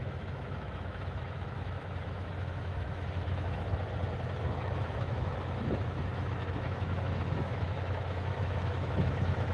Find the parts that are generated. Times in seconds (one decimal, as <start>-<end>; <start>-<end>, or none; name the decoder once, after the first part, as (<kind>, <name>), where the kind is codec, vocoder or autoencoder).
0.0-3.7 (autoencoder, DAC-VAE); 4.4-9.5